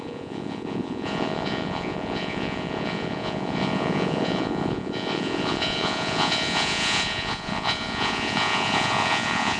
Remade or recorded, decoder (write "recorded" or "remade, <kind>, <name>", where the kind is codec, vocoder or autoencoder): remade, vocoder, Vocos